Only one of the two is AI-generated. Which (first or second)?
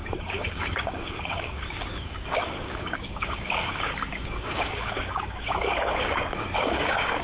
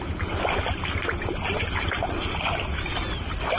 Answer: first